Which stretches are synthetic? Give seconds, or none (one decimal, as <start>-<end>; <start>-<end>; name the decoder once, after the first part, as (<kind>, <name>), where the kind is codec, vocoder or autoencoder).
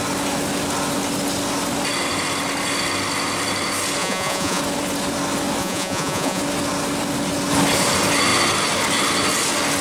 4.0-4.6 (vocoder, Vocos); 5.6-6.4